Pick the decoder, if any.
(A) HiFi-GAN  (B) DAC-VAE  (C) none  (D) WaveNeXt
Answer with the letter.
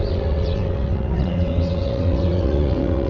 D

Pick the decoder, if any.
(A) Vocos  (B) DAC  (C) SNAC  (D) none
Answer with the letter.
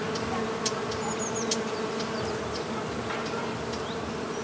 D